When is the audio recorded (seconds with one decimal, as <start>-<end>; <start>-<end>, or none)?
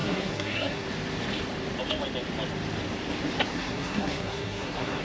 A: 0.8-3.5